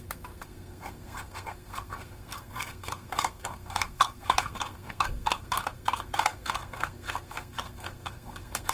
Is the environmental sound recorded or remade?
remade